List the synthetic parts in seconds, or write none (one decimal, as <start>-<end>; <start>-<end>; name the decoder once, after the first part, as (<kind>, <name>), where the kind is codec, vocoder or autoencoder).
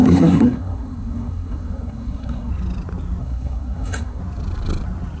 0.0-2.5 (codec, SNAC); 3.2-4.2